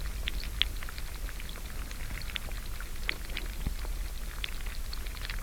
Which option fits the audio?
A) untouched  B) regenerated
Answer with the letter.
A